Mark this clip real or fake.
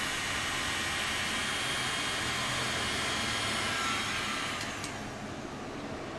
real